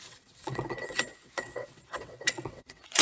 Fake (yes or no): yes